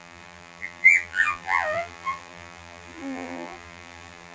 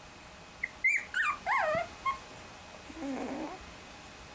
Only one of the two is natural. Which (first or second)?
second